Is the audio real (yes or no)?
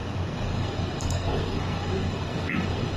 no